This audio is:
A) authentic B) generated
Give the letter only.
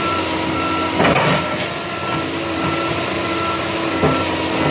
A